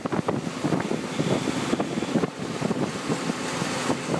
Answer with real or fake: real